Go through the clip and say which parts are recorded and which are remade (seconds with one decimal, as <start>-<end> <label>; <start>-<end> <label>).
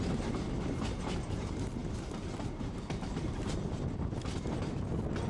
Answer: 0.0-1.8 recorded; 1.8-4.4 remade; 4.4-5.3 recorded